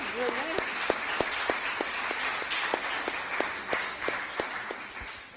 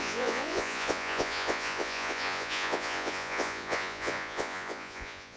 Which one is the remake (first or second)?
second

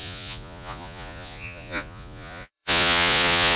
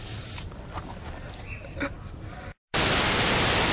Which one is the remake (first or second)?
first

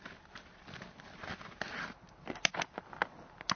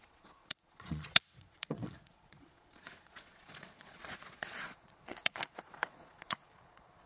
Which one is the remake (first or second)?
second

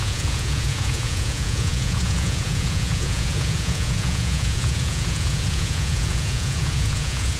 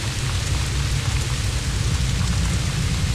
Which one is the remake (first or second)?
first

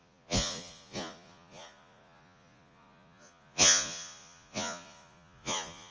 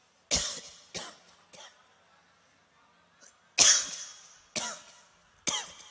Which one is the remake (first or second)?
first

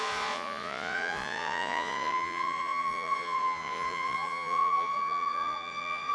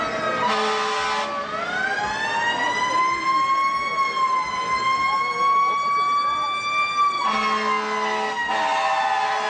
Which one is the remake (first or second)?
first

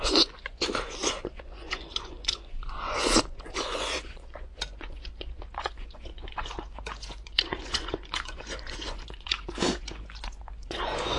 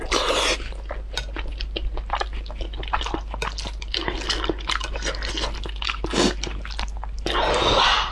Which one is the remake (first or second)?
first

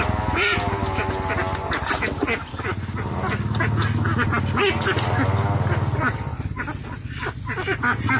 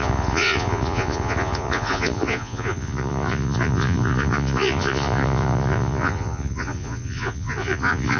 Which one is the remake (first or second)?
second